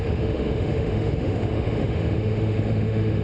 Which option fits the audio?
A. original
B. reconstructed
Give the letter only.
B